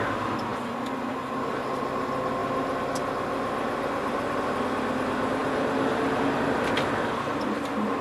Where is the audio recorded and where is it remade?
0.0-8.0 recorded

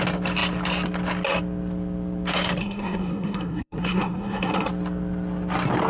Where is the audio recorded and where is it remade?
0.0-2.6 recorded; 2.6-4.7 remade; 4.7-5.9 recorded

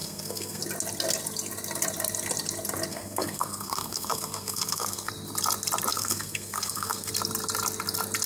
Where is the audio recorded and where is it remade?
0.0-0.6 remade; 0.6-2.9 recorded; 2.9-5.1 remade; 5.1-5.9 recorded; 5.9-7.1 remade; 7.1-8.3 recorded

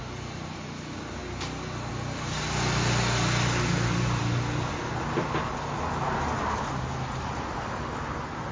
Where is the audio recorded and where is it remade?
0.0-8.5 recorded

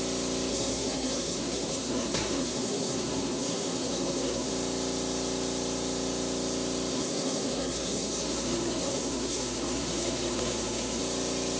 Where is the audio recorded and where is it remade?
0.0-0.5 recorded; 0.5-4.5 remade; 4.5-6.9 recorded; 6.9-11.0 remade; 11.0-11.6 recorded

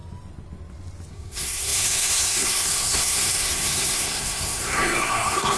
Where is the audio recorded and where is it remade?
0.0-1.1 recorded; 1.1-5.6 remade

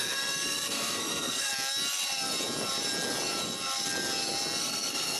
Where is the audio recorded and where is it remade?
0.0-1.5 remade; 1.5-4.6 recorded; 4.6-5.2 remade

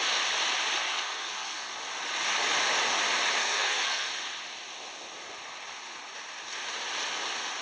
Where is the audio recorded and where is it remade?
0.0-0.8 recorded; 0.8-1.7 remade; 1.7-3.4 recorded; 3.4-4.1 remade; 4.1-7.6 recorded